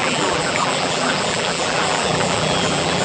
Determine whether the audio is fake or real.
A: fake